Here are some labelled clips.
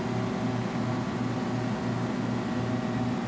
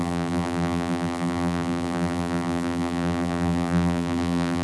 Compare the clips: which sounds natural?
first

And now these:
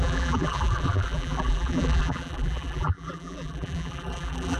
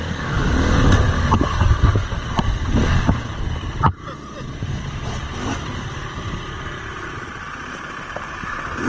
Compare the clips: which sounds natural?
second